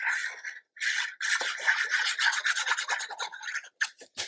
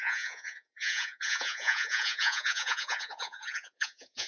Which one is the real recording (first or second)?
first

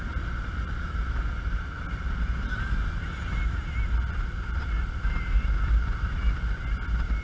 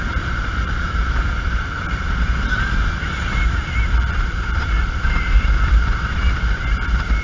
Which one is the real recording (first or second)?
first